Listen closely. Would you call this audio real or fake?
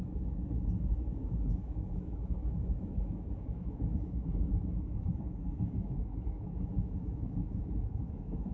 fake